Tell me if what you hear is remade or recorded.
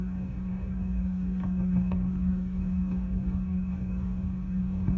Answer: remade